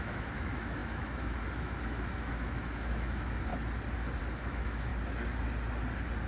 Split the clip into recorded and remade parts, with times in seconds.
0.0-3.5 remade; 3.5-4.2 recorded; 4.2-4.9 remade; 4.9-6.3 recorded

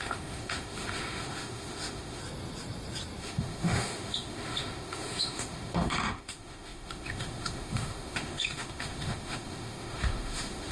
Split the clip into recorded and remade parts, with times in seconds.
0.0-2.2 remade; 2.2-3.2 recorded; 3.2-10.7 remade

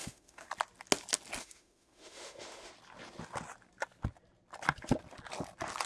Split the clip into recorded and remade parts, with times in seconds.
0.0-0.5 remade; 0.5-1.4 recorded; 1.4-2.7 remade; 2.7-5.9 recorded

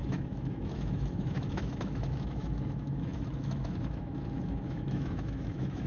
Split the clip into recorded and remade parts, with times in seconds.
0.0-5.9 remade

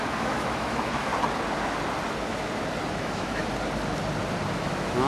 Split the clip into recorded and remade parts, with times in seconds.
0.0-1.1 remade; 1.1-2.9 recorded; 2.9-3.4 remade; 3.4-4.5 recorded; 4.5-5.1 remade